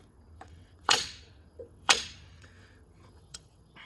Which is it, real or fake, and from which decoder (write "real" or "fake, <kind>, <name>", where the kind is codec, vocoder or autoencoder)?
fake, vocoder, WaveNeXt